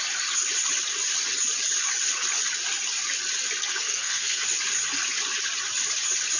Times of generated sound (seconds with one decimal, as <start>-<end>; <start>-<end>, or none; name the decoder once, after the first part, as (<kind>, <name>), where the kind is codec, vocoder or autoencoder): 3.6-4.4 (codec, SNAC)